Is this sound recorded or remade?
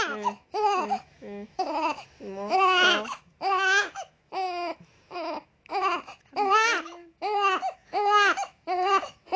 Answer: remade